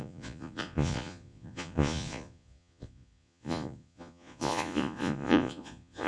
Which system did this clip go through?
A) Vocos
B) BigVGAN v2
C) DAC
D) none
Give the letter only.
A